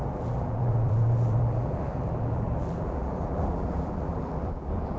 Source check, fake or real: fake